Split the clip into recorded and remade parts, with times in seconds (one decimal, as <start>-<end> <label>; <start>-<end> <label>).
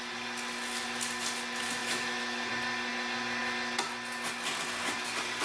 0.0-1.8 recorded; 1.8-2.5 remade; 2.5-5.4 recorded